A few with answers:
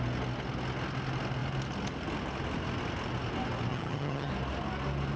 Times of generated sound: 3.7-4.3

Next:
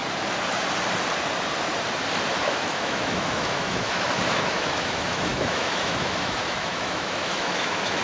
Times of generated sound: 2.4-8.0

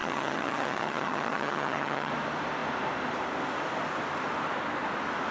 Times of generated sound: 0.0-2.1

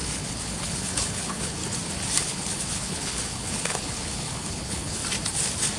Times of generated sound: 0.0-1.6; 2.2-5.0

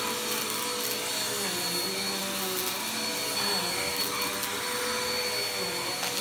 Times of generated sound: none

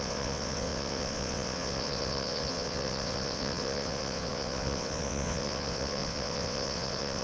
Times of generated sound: 0.0-7.2